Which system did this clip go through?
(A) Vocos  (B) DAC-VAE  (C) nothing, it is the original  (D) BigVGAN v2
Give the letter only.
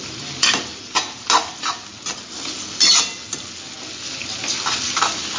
C